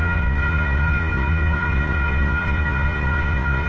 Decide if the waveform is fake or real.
fake